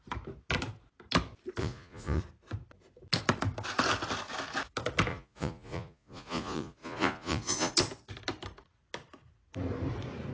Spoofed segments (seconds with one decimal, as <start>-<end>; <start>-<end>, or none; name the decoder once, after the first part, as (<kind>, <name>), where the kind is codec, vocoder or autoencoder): 1.6-2.2 (vocoder, Vocos); 5.1-7.7